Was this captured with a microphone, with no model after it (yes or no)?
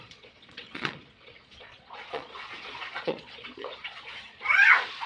no